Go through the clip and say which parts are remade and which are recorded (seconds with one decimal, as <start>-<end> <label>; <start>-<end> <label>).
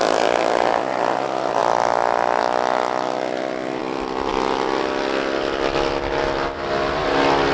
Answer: 0.0-7.5 recorded